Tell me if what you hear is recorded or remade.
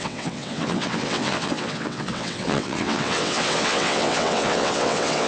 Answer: remade